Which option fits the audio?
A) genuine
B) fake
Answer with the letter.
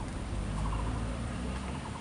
B